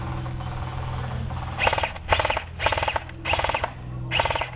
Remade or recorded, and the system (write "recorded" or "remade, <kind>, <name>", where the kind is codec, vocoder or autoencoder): recorded